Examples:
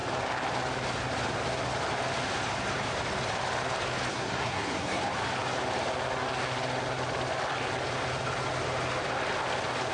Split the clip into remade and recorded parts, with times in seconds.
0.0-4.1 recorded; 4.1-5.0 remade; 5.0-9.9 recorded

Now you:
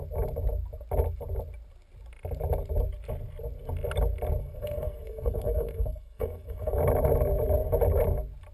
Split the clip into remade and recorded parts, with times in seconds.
0.0-4.4 recorded; 4.4-6.8 remade; 6.8-8.5 recorded